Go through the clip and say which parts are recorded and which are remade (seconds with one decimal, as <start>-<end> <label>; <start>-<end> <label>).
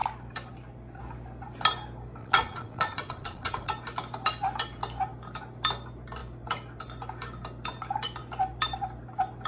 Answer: 0.0-2.2 recorded; 2.2-3.7 remade; 3.7-9.5 recorded